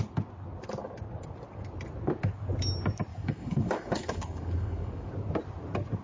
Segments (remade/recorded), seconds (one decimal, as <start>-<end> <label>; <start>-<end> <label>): 0.0-3.1 recorded; 3.1-5.1 remade; 5.1-6.0 recorded